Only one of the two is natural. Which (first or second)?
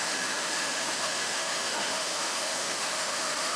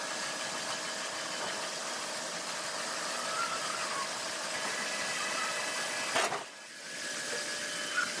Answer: second